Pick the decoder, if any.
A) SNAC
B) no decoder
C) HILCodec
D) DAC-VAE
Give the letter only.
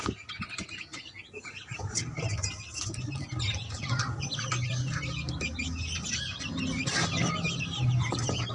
B